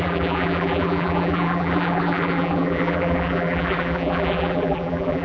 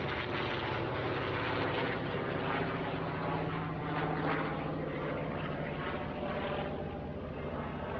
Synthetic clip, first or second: first